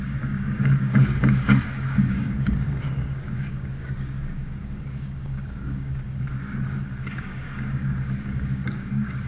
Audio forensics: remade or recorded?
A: remade